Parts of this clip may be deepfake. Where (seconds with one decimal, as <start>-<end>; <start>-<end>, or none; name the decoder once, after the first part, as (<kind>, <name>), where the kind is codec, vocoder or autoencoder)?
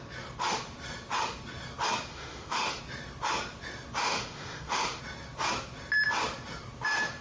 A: 2.1-2.8 (autoencoder, DAC-VAE); 4.0-5.0